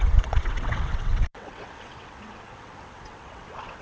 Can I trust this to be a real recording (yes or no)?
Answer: no